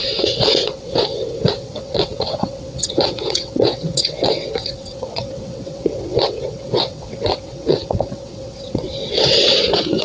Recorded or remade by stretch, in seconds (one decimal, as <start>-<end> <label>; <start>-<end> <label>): 0.0-10.0 remade